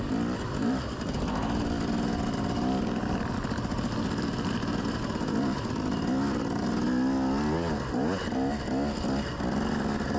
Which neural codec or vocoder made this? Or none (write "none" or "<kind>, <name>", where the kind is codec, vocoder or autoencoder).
none